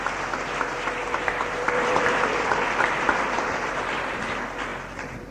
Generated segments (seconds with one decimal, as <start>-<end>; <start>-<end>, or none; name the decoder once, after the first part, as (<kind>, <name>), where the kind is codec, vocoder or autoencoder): 1.0-4.2 (vocoder, BigVGAN v2)